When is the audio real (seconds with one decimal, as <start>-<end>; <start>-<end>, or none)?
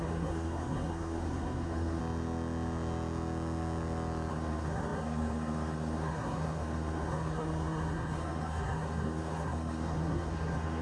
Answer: 2.0-4.3